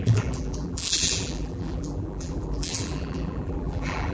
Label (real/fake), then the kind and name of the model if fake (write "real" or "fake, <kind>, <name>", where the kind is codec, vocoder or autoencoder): fake, vocoder, BigVGAN v2